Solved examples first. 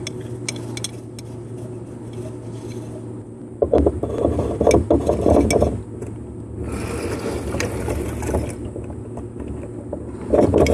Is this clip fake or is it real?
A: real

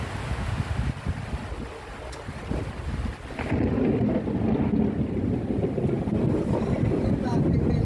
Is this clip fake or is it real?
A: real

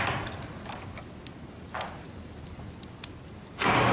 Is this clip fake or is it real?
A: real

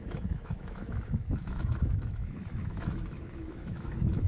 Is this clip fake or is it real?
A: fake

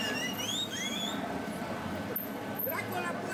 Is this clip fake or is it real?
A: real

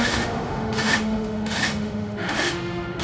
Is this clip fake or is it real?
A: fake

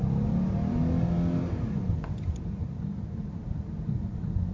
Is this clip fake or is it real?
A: real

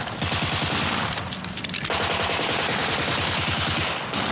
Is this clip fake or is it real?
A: real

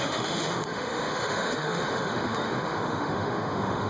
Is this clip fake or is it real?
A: fake